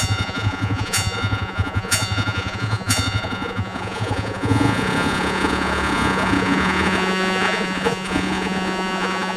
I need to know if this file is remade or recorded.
remade